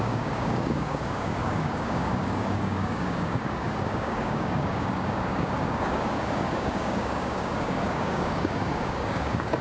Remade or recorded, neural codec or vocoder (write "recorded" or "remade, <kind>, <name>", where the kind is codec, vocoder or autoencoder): remade, codec, DAC